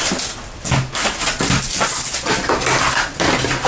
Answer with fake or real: real